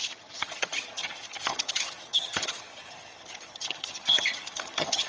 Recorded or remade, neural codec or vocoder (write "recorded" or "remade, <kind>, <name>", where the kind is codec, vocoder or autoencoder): remade, vocoder, HiFi-GAN